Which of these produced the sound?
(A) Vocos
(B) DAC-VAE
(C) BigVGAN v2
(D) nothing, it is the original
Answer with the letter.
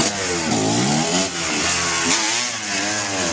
D